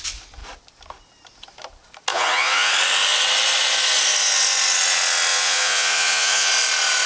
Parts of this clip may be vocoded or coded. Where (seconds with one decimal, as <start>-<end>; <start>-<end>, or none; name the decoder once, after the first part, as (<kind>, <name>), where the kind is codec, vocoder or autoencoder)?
2.1-2.7 (vocoder, Vocos); 5.3-6.5